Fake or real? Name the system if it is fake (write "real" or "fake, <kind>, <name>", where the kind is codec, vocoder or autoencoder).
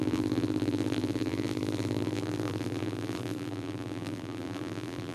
fake, vocoder, BigVGAN v2